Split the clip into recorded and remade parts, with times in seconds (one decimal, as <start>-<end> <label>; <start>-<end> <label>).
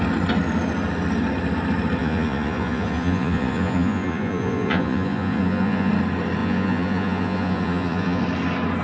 0.0-2.0 recorded; 2.0-5.9 remade; 5.9-6.4 recorded; 6.4-8.2 remade; 8.2-8.8 recorded